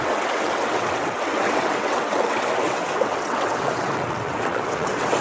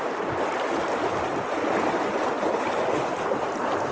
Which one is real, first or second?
second